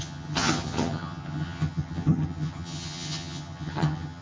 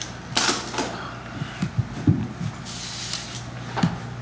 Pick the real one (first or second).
second